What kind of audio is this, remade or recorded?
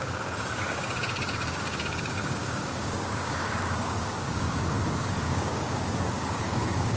remade